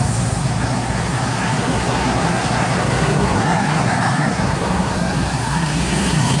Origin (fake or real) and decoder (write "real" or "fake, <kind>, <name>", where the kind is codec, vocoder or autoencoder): fake, codec, SNAC